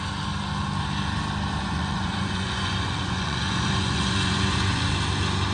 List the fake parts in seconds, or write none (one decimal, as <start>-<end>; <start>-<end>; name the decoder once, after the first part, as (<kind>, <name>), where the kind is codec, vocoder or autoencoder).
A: 1.6-4.9 (vocoder, Vocos)